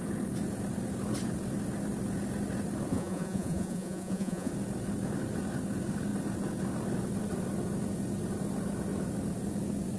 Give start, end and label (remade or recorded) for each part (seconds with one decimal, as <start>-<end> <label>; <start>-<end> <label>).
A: 0.0-2.9 recorded; 2.9-4.5 remade; 4.5-10.0 recorded